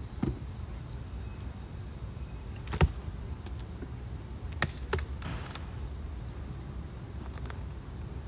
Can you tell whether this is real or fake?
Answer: real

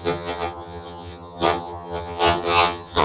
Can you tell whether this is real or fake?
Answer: fake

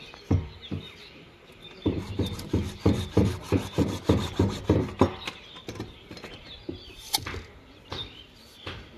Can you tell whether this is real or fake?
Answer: real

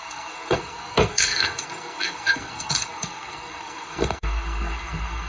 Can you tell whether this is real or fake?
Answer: fake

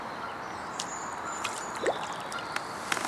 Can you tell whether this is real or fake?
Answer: real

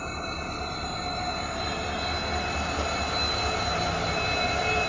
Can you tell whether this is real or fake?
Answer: real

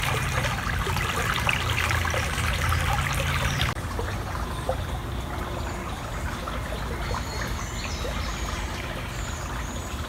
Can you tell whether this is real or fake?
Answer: real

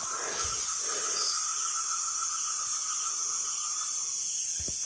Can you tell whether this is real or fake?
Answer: real